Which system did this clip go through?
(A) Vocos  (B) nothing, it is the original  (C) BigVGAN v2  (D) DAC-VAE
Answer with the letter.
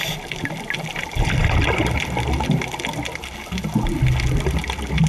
B